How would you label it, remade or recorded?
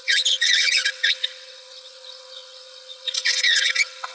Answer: remade